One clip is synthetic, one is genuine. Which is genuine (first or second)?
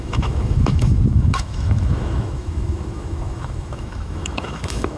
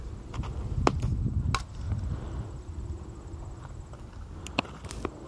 second